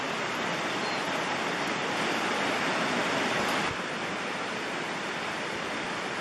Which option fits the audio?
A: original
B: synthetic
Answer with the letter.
A